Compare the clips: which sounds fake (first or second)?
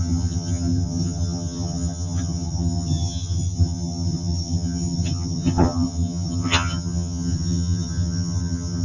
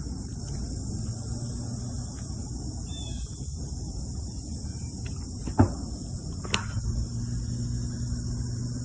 first